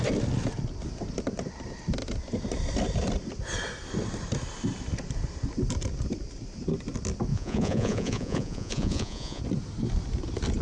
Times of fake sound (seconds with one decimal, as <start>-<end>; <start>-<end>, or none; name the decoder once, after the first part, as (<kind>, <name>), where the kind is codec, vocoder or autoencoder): 7.3-9.4 (vocoder, Vocos)